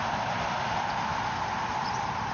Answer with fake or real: real